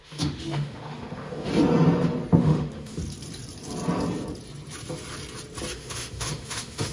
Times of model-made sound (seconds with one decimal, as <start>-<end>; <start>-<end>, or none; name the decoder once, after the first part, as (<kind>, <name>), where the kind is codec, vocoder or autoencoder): 0.0-1.5 (autoencoder, DAC-VAE); 2.4-3.0; 5.7-6.9